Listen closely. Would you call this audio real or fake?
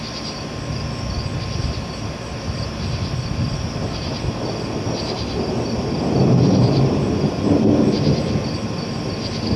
real